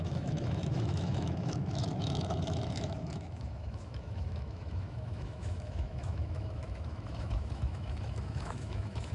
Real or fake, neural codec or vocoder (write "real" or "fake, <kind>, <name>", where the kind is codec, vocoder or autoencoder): fake, autoencoder, DAC-VAE